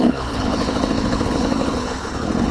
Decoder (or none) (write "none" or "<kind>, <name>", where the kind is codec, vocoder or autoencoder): codec, HILCodec